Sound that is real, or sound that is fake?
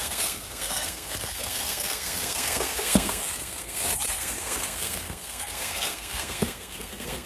fake